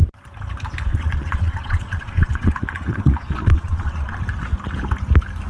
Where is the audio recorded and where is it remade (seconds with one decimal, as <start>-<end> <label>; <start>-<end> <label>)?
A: 0.0-0.9 recorded; 0.9-4.2 remade; 4.2-5.5 recorded